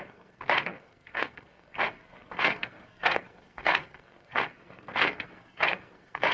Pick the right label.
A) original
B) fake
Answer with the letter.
B